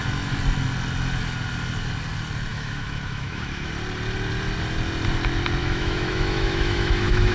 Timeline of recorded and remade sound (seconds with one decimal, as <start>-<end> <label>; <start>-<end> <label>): 0.0-2.5 recorded; 2.5-3.7 remade; 3.7-5.6 recorded; 5.6-7.3 remade